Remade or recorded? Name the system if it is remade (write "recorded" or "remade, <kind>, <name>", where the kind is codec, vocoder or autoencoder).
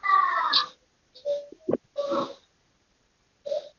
recorded